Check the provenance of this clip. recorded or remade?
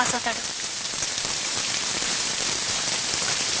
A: remade